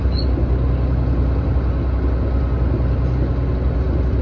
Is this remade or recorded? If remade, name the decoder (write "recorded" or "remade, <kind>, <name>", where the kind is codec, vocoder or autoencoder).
recorded